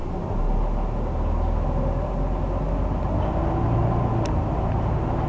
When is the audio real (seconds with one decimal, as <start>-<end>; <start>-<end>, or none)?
0.0-5.3